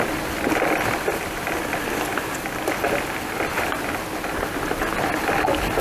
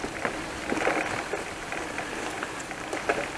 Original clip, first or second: first